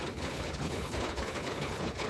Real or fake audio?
fake